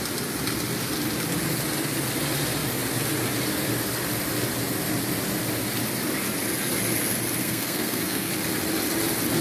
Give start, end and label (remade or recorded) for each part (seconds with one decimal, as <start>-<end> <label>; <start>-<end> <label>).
0.0-7.4 recorded; 7.4-8.3 remade; 8.3-9.4 recorded